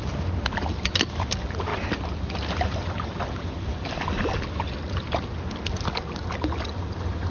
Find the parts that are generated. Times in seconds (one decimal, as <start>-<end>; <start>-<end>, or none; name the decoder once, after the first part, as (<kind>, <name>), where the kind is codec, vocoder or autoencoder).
none